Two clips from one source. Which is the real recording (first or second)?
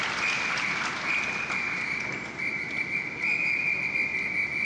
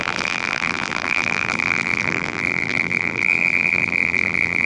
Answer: first